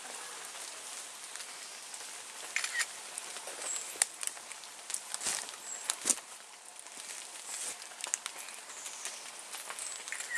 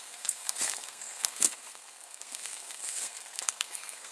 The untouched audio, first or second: first